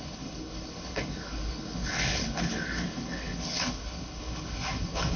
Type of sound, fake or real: fake